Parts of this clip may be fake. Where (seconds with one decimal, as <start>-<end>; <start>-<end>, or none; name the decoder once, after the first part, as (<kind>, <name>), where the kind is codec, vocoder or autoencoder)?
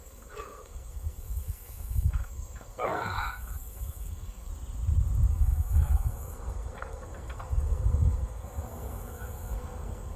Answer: 0.0-4.5 (codec, SNAC); 5.3-10.2